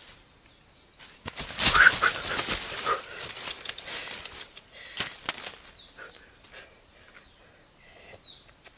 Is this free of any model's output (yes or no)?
yes